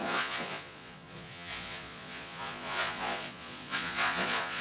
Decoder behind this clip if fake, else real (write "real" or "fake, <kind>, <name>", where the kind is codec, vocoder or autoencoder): fake, vocoder, Vocos